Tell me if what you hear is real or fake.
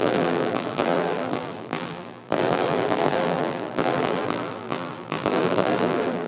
fake